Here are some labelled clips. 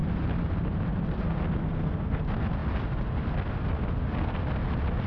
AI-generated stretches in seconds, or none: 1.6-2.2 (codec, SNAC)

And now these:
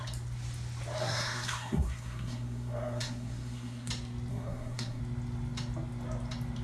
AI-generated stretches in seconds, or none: 1.0-3.9 (codec, SNAC); 4.3-5.0

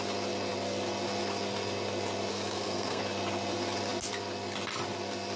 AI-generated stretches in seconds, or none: 2.3-3.0 (codec, SNAC)